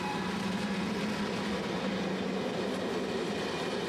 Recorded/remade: recorded